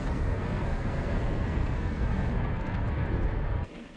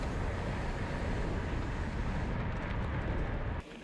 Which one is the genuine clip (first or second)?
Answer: second